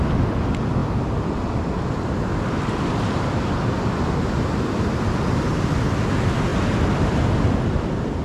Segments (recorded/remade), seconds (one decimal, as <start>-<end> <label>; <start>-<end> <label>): 0.0-8.2 recorded